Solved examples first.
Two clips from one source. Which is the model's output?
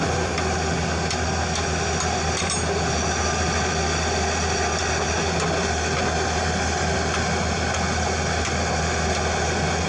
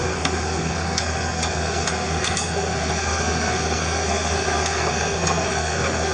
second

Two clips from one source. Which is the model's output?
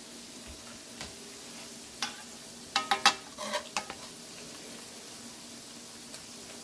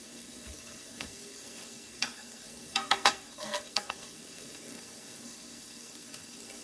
second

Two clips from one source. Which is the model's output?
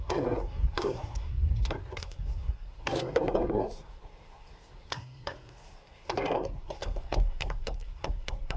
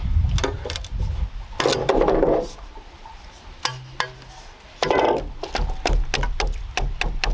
first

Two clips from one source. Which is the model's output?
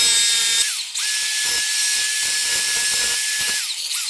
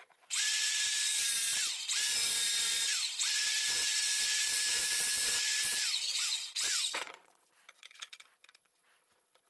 second